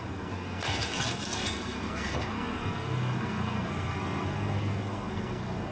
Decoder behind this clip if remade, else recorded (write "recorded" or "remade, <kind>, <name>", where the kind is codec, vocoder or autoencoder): remade, codec, SNAC